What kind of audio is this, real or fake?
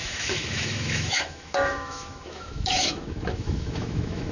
fake